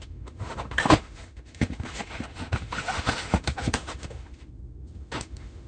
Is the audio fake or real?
fake